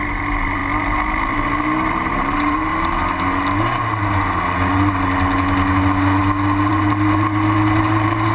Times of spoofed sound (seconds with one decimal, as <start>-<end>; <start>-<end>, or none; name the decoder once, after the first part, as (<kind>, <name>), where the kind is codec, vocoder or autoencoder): 0.0-0.6 (vocoder, BigVGAN v2); 1.9-2.7; 6.7-8.3